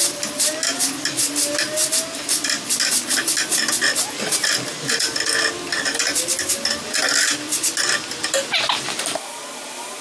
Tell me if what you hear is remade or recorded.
recorded